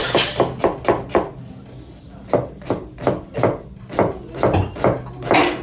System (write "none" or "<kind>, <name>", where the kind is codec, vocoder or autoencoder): none